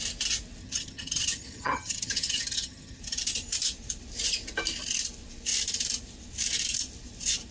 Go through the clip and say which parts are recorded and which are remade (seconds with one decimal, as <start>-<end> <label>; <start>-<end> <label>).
0.0-0.6 recorded; 0.6-3.0 remade; 3.0-7.5 recorded